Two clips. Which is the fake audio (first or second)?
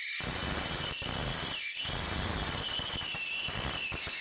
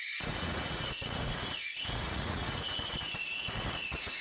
second